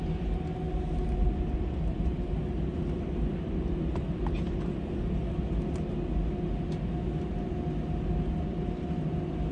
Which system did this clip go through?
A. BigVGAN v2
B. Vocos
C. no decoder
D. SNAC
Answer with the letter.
C